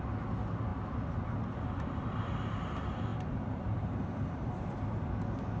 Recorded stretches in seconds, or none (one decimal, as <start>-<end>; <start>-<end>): 0.0-3.1; 4.5-5.6